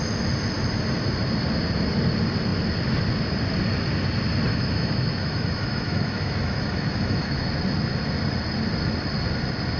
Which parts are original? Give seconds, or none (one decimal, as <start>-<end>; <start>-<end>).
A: 0.0-4.5; 7.5-9.8